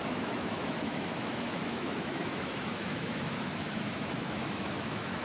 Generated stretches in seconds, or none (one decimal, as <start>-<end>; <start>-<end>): 0.0-5.2